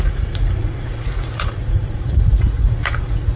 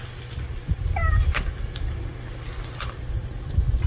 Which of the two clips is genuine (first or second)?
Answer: second